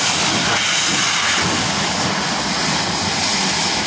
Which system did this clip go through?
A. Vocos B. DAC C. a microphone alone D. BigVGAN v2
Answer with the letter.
C